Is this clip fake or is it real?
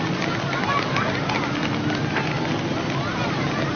real